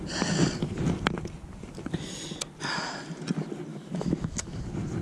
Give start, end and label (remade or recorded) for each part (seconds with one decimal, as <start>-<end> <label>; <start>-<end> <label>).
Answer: 0.0-3.7 recorded; 3.7-4.6 remade; 4.6-5.0 recorded